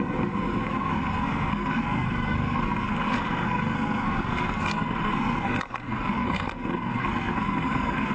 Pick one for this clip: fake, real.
fake